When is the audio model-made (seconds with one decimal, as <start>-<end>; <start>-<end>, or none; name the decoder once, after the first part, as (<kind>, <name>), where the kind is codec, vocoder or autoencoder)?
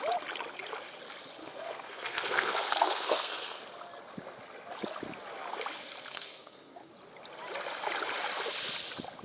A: 1.4-3.6 (codec, SNAC); 6.1-6.9